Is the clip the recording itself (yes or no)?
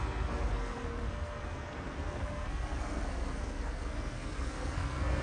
no